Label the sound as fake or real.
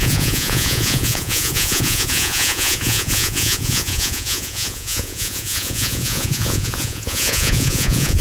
fake